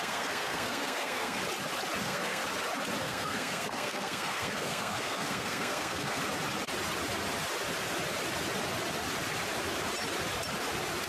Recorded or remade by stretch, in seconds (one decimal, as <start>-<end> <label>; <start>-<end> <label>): 0.0-1.4 remade; 1.4-2.0 recorded; 2.0-2.4 remade; 2.4-3.0 recorded; 3.0-6.2 remade; 6.2-11.1 recorded